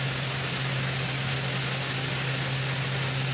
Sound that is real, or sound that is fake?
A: real